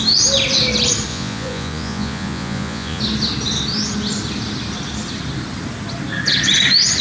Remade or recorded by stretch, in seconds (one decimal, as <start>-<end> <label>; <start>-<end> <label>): 0.0-1.1 recorded; 1.1-3.0 remade; 3.0-7.0 recorded